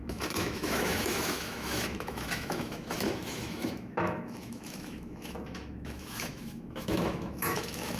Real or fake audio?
fake